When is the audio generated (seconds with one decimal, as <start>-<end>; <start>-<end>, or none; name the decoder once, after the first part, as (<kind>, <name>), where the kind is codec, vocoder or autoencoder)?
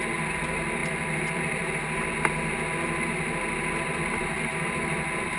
none